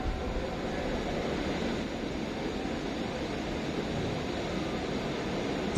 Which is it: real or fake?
real